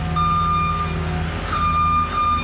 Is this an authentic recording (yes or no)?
yes